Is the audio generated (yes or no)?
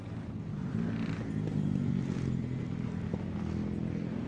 no